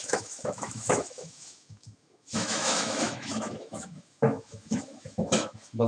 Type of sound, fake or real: fake